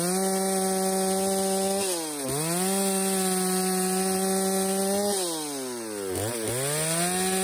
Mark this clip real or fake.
real